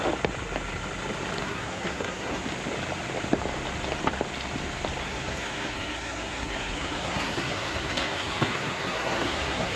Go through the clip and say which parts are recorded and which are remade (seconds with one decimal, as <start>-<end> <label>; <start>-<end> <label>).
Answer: 0.0-1.4 recorded; 1.4-2.4 remade; 2.4-5.0 recorded; 5.0-9.8 remade

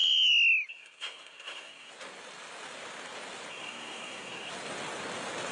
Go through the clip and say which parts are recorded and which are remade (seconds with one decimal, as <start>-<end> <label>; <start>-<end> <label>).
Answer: 0.0-0.7 recorded; 0.7-1.9 remade; 1.9-3.5 recorded; 3.5-4.5 remade; 4.5-5.5 recorded

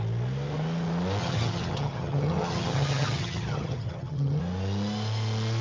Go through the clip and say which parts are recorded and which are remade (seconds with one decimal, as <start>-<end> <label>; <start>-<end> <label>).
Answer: 0.0-1.2 recorded; 1.2-4.4 remade; 4.4-5.6 recorded